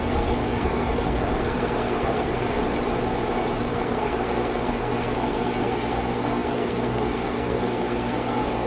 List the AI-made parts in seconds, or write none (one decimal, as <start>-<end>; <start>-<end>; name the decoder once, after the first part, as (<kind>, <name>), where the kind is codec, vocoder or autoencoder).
0.0-2.6 (codec, SNAC); 3.6-8.7